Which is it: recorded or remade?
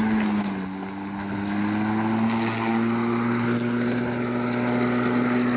recorded